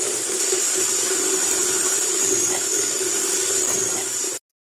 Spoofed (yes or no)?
no